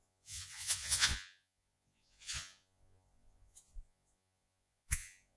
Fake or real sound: fake